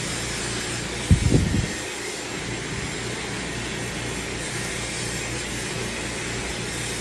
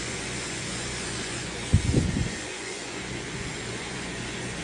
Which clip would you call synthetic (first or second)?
second